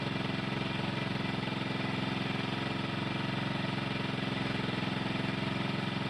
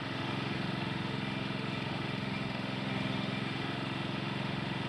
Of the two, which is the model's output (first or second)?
second